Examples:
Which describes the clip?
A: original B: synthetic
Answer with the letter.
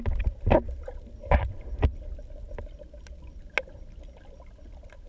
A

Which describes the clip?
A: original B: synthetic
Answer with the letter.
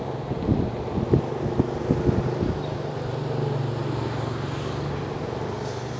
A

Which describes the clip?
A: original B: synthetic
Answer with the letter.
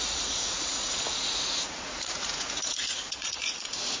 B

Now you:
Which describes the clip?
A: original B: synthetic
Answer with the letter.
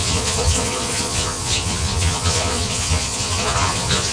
B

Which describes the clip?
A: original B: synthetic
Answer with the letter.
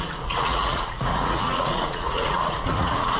B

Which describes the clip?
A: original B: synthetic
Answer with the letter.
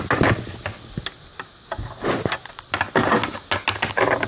A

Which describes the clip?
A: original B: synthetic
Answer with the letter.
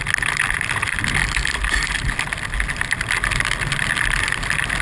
A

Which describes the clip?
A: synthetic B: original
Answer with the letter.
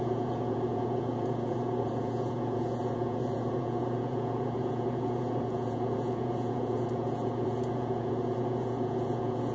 A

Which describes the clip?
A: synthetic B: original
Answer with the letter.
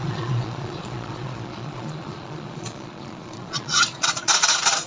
A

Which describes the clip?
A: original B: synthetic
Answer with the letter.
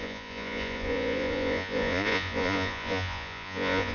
B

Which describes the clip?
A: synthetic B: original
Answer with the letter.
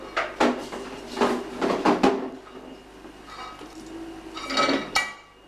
B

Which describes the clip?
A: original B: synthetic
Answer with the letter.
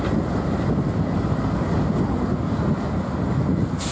A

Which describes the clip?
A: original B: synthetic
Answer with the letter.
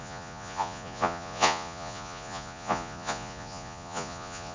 B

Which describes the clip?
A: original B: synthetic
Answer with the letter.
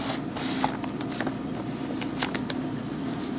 A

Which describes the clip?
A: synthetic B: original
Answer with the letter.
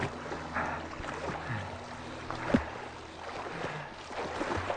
B